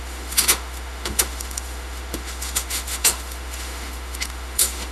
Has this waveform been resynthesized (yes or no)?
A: yes